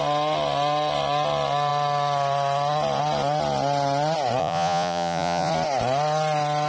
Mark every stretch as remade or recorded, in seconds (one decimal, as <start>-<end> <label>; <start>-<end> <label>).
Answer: 0.0-4.4 recorded; 4.4-5.5 remade; 5.5-6.7 recorded

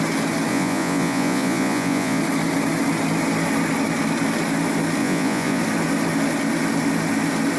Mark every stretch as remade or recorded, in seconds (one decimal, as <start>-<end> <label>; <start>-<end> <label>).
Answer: 0.0-0.5 recorded; 0.5-2.2 remade; 2.2-5.0 recorded; 5.0-5.6 remade; 5.6-7.6 recorded

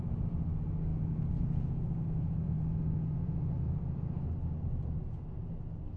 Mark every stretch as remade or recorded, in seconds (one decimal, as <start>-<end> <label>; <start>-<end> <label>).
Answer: 0.0-0.9 recorded; 0.9-3.8 remade; 3.8-6.0 recorded

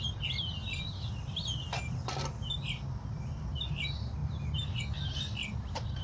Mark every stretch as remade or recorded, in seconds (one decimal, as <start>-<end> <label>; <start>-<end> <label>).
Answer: 0.0-4.2 recorded; 4.2-4.8 remade; 4.8-6.0 recorded

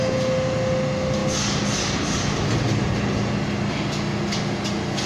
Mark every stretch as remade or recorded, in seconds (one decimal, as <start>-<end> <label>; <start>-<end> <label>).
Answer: 0.0-5.1 recorded

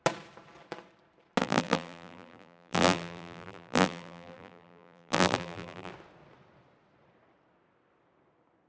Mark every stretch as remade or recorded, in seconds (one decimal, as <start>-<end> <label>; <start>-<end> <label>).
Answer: 0.0-1.4 recorded; 1.4-5.9 remade; 5.9-8.7 recorded